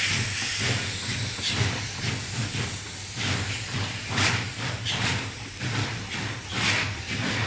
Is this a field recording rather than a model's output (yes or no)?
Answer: yes